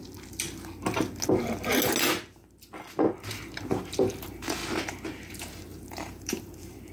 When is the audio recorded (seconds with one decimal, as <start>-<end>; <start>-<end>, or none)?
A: 0.0-4.1; 4.6-5.3